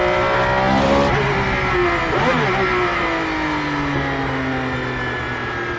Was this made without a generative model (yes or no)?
yes